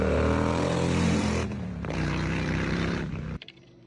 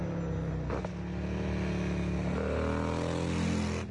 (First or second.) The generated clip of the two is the first